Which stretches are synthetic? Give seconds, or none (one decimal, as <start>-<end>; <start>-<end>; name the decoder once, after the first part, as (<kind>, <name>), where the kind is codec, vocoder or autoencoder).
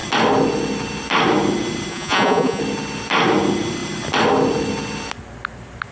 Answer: 1.9-2.6 (vocoder, Vocos)